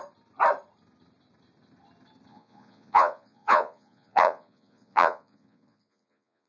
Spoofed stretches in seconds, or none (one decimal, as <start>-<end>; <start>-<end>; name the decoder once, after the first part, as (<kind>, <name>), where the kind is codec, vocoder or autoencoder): 2.3-6.5 (vocoder, Vocos)